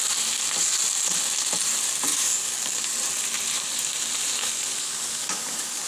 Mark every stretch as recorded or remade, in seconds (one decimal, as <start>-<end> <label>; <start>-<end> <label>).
0.0-2.1 recorded; 2.1-2.9 remade; 2.9-4.4 recorded; 4.4-5.9 remade